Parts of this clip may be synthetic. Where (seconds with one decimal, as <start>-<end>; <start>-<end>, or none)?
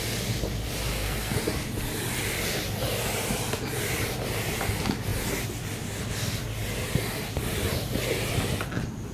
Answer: 0.9-1.4